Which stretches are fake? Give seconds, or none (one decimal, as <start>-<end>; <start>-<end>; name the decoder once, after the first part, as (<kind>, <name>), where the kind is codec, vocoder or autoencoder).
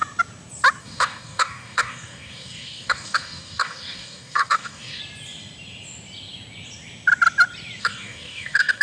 0.8-5.0 (codec, DAC); 7.8-8.8